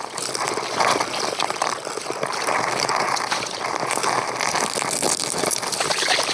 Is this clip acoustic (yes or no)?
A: yes